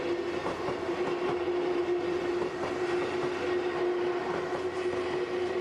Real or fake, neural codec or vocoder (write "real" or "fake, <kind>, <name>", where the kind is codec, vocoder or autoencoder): real